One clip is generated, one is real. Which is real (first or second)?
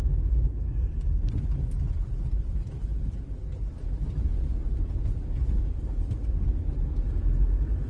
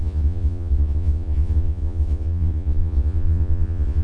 first